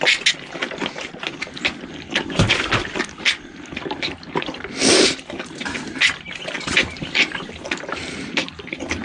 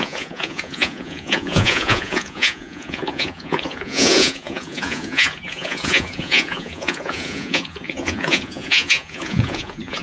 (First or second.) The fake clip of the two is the second